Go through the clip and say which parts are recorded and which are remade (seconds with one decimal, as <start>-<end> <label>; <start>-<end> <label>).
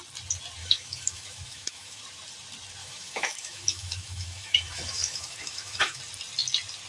0.0-0.6 recorded; 0.6-2.0 remade; 2.0-2.8 recorded; 2.8-6.0 remade; 6.0-6.9 recorded